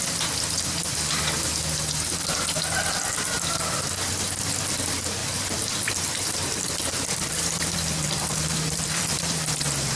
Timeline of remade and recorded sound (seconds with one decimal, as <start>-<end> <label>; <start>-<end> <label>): 0.0-5.2 recorded; 5.2-9.6 remade; 9.6-10.0 recorded